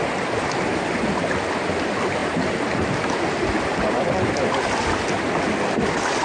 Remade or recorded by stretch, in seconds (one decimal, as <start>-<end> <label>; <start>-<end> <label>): 0.0-6.2 recorded